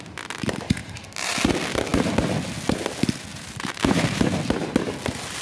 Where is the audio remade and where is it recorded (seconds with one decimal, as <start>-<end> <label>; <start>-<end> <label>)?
0.0-0.8 recorded; 0.8-1.5 remade; 1.5-3.3 recorded; 3.3-4.2 remade; 4.2-5.4 recorded